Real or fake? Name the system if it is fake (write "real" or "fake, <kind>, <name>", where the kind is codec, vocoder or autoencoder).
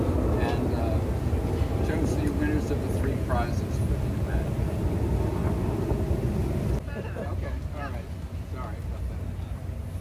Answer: real